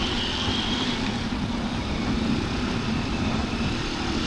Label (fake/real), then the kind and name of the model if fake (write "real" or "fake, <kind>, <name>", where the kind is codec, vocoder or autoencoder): real